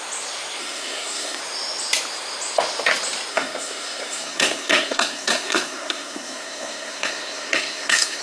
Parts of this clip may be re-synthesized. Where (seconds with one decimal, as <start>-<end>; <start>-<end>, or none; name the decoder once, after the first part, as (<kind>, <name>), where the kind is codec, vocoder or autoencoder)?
0.6-1.4 (codec, SNAC); 3.3-8.2

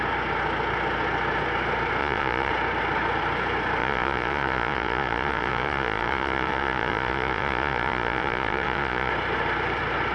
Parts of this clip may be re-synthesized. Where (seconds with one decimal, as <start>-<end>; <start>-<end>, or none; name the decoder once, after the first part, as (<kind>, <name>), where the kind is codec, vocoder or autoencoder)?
2.0-2.5 (vocoder, Vocos); 3.8-9.1

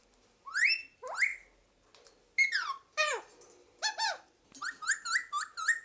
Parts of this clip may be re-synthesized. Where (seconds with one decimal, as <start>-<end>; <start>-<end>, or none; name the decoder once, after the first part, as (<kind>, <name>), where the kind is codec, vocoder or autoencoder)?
none

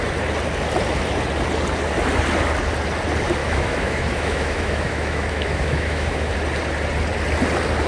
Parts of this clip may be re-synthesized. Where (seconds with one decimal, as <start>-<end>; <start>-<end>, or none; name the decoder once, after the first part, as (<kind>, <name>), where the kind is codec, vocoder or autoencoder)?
3.4-6.3 (autoencoder, DAC-VAE)

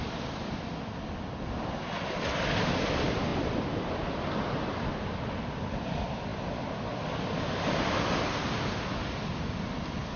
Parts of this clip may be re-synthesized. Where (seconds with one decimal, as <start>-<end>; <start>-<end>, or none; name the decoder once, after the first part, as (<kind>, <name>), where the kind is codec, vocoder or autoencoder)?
none